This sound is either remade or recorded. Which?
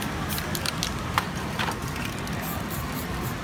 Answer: recorded